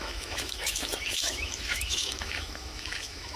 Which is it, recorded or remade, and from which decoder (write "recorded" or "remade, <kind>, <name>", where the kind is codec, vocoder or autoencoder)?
remade, autoencoder, DAC-VAE